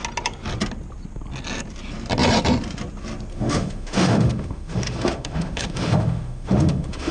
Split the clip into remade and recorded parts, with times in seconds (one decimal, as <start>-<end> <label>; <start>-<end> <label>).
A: 0.0-3.3 recorded; 3.3-7.1 remade